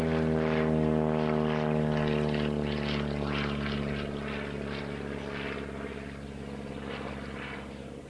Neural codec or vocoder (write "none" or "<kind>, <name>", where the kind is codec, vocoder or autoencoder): none